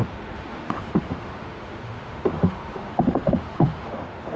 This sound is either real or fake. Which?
fake